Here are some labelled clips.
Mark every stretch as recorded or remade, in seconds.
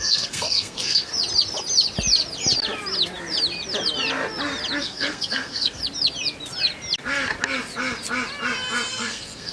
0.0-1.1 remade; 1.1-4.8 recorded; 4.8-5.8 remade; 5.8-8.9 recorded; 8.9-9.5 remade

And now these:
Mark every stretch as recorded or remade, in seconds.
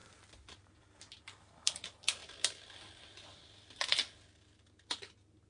0.0-5.5 recorded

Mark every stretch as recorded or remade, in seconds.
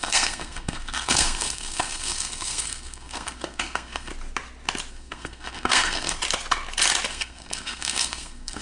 0.0-4.1 remade; 4.1-4.9 recorded; 4.9-6.2 remade; 6.2-7.1 recorded; 7.1-8.6 remade